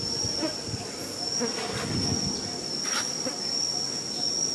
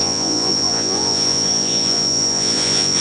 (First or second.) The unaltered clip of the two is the first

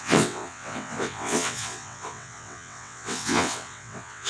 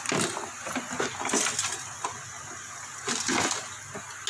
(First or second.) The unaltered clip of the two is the second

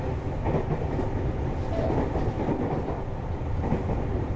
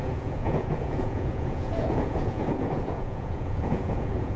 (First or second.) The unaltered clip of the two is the first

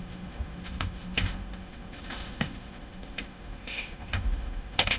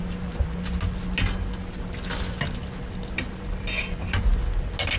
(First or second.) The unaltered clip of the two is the second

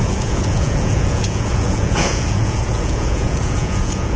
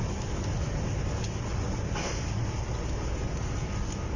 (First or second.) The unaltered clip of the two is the second